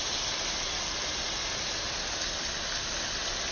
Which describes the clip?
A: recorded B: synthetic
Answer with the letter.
A